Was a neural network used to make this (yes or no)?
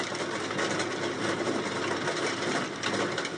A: no